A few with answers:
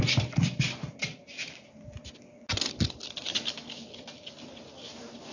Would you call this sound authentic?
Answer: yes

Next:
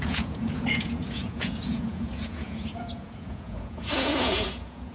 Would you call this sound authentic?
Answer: no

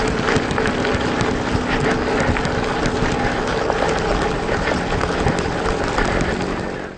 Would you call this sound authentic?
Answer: yes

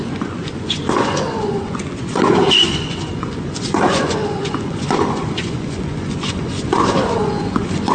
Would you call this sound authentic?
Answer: no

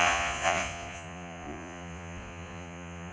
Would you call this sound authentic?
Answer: no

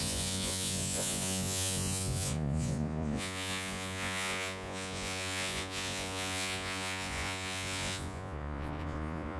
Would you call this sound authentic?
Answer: no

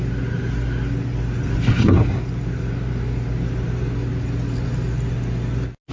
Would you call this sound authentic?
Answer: yes